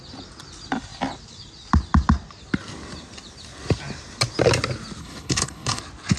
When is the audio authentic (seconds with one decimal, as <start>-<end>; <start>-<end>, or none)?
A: 0.0-5.0; 5.8-6.2